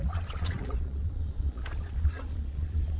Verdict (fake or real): fake